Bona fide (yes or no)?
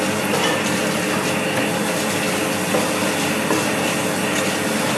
yes